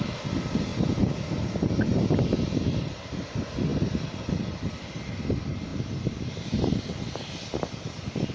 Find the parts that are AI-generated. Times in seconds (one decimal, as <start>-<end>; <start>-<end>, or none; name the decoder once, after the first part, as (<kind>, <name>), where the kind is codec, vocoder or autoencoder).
0.0-0.7 (vocoder, BigVGAN v2); 2.0-3.7; 4.5-5.7; 7.0-8.3